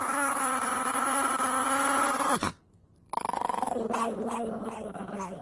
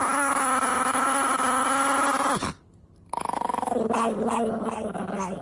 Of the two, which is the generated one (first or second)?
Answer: first